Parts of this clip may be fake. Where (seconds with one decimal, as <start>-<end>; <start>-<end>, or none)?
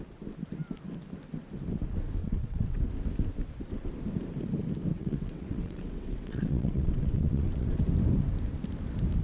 2.2-2.9; 4.9-7.8